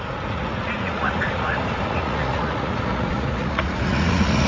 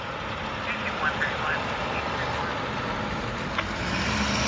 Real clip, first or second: second